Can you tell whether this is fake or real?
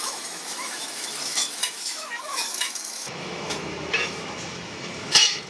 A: fake